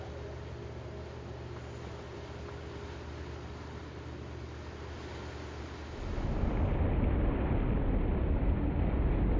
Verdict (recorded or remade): recorded